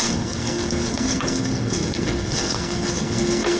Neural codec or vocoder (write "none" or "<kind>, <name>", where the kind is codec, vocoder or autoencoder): codec, SNAC